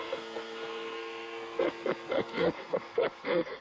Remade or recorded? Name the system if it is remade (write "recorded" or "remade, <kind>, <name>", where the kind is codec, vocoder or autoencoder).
remade, codec, SNAC